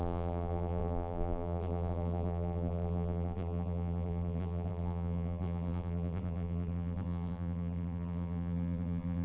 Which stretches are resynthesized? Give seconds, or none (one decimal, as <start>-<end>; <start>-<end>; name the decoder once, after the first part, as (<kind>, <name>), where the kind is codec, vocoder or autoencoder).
0.0-9.2 (vocoder, BigVGAN v2)